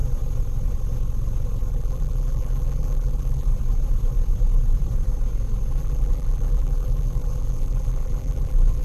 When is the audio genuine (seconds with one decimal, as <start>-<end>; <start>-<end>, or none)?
0.0-1.7; 3.5-5.7